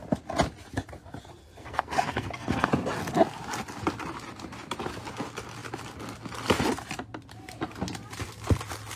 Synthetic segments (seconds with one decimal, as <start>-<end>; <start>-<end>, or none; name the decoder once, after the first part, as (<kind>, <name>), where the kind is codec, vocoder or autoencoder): 1.4-2.7 (codec, SNAC)